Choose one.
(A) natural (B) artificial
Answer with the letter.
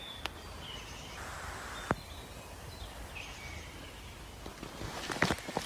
A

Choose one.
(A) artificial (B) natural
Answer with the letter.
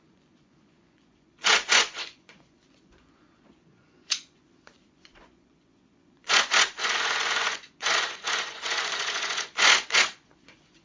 A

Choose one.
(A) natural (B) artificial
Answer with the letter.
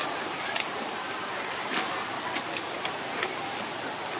A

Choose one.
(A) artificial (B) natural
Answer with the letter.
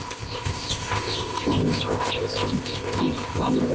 A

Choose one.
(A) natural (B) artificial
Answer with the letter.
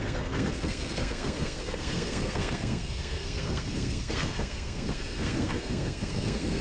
B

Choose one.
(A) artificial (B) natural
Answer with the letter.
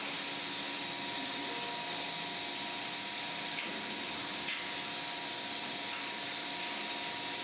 B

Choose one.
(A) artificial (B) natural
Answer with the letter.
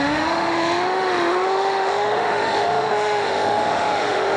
A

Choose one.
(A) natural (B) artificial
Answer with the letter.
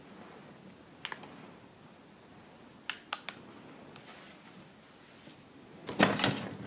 A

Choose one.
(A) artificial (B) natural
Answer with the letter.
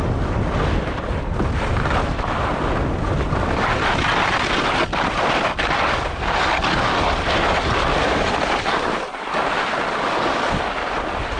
B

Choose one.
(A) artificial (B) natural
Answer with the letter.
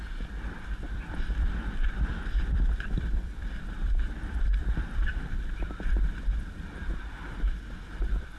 A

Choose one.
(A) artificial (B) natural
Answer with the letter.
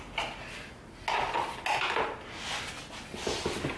B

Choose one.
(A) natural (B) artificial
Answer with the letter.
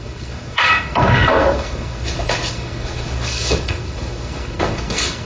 B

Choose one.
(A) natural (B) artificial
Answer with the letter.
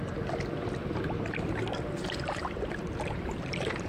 A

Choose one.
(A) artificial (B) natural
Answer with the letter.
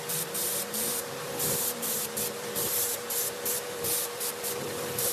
A